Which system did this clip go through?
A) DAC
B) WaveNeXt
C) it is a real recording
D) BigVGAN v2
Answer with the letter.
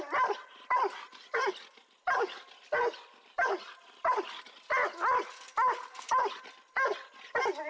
C